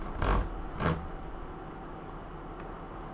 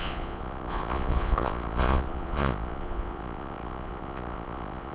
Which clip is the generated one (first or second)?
second